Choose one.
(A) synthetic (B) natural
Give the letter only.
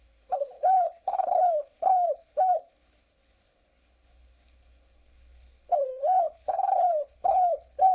A